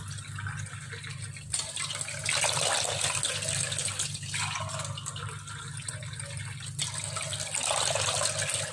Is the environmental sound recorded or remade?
recorded